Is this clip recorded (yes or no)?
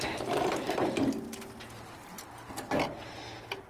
yes